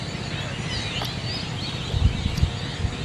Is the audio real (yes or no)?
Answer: yes